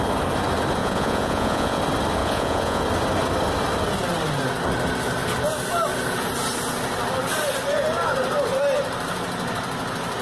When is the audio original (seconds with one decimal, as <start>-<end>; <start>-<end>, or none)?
0.0-0.8; 1.8-2.2; 2.8-10.2